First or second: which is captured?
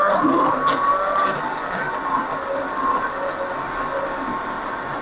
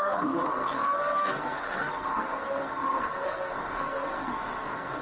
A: first